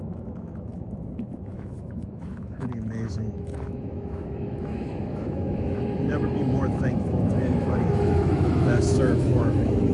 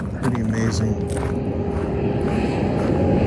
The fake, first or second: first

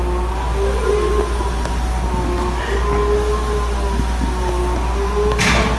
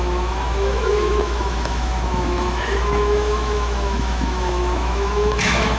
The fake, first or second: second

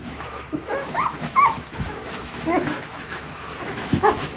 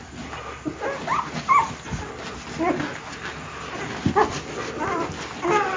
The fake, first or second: first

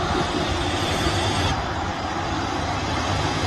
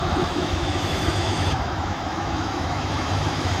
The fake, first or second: second